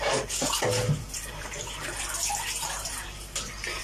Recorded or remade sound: recorded